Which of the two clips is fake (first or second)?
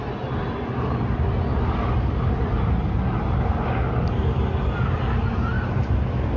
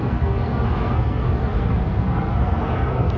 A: second